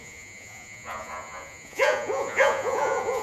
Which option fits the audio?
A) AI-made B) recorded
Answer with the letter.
A